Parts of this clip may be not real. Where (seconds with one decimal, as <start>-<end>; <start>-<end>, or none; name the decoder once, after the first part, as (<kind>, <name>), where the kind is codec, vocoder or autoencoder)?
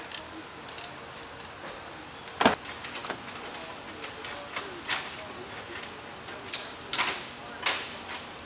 none